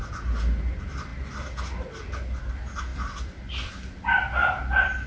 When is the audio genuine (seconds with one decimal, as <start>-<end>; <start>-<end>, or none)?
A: 0.0-2.9; 3.7-4.4

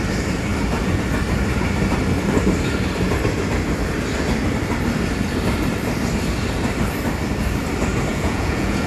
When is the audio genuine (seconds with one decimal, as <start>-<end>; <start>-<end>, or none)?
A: 0.0-8.1

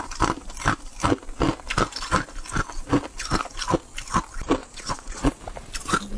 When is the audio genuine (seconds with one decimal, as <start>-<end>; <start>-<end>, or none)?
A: 0.0-4.6; 5.4-6.2